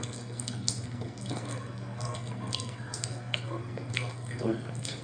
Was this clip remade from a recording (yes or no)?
yes